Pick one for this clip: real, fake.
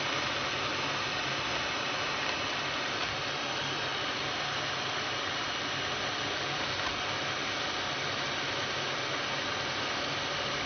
real